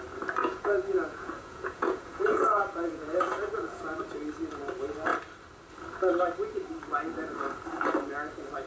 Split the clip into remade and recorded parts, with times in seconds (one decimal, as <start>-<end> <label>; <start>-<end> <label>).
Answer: 0.0-0.4 recorded; 0.4-4.0 remade; 4.0-8.7 recorded